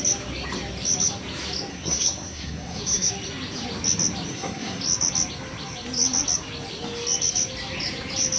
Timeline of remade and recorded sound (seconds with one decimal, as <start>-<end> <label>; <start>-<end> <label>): 0.0-1.7 recorded; 1.7-3.1 remade; 3.1-4.3 recorded; 4.3-4.8 remade; 4.8-8.4 recorded